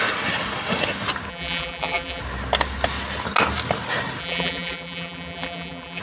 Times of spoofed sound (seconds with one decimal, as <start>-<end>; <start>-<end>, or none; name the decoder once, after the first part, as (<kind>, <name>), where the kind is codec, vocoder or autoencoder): 1.3-2.2 (vocoder, BigVGAN v2); 4.2-6.0